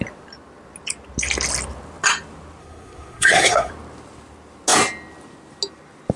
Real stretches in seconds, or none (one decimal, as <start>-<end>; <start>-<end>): 0.0-2.6; 3.7-6.2